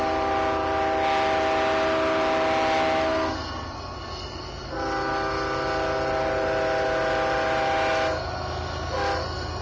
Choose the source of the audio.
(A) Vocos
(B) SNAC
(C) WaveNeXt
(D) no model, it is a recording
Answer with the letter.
D